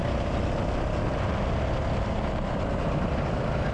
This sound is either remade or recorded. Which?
recorded